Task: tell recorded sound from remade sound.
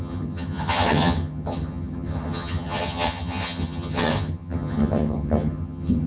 remade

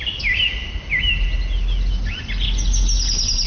recorded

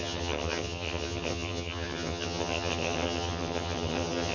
remade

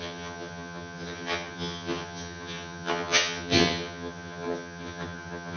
remade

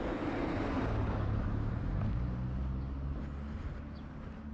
recorded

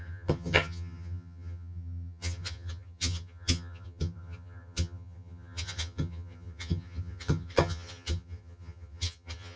remade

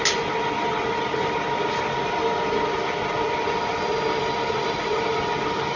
recorded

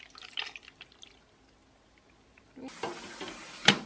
recorded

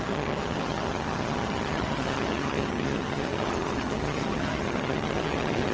remade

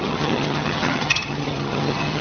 remade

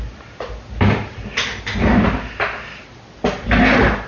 recorded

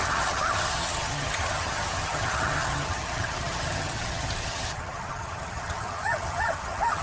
remade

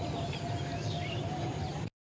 recorded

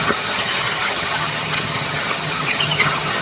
remade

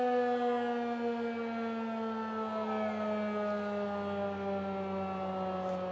recorded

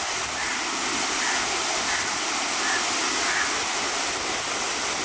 recorded